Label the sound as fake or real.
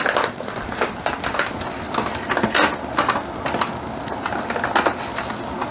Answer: real